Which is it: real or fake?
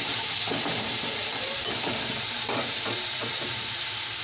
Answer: fake